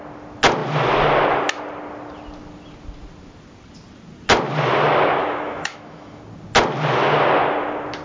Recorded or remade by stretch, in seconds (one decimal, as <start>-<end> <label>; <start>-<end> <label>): 0.0-5.2 recorded; 5.2-6.2 remade; 6.2-8.0 recorded